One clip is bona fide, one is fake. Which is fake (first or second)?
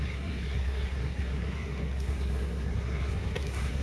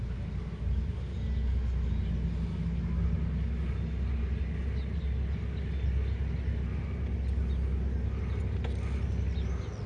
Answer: first